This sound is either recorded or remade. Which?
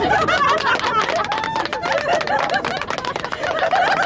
recorded